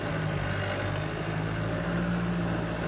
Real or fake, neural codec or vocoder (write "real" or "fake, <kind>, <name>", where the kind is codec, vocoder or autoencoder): real